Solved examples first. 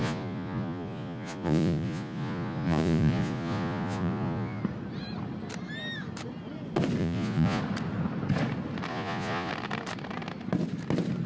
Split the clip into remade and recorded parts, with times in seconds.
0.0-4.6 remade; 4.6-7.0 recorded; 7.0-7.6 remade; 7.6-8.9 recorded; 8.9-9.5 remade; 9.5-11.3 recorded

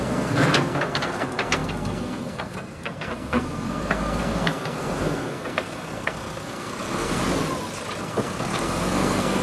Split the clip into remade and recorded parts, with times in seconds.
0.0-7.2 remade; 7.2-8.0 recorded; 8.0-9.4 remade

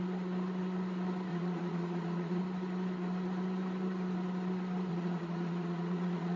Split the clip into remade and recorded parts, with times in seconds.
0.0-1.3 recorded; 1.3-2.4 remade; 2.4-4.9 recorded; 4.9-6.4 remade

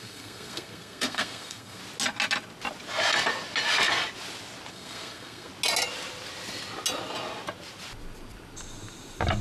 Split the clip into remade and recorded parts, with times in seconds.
0.0-1.8 remade; 1.8-4.7 recorded; 4.7-5.5 remade; 5.5-9.4 recorded

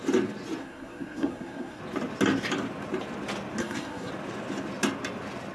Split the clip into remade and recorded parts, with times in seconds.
0.0-0.6 recorded; 0.6-1.8 remade; 1.8-3.6 recorded; 3.6-4.1 remade; 4.1-5.5 recorded

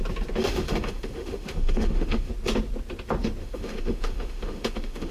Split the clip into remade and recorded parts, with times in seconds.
0.0-0.4 recorded; 0.4-2.3 remade; 2.3-3.4 recorded; 3.4-5.1 remade

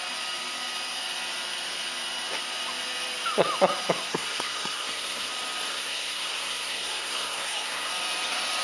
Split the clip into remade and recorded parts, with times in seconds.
0.0-4.1 recorded; 4.1-5.3 remade; 5.3-5.7 recorded; 5.7-7.9 remade; 7.9-8.6 recorded

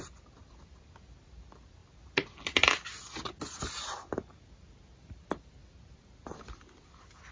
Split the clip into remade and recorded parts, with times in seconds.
0.0-1.8 recorded; 1.8-2.5 remade; 2.5-7.3 recorded